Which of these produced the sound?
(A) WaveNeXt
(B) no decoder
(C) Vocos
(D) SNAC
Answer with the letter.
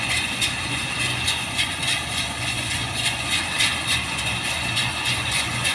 C